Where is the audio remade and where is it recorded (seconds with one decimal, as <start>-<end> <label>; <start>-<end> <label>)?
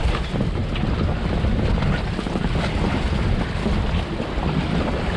0.0-5.2 recorded